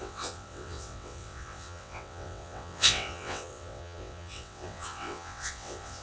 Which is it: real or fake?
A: fake